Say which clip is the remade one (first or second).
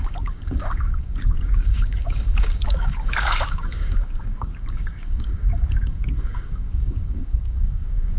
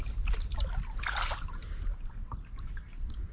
first